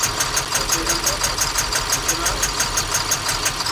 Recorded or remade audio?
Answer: recorded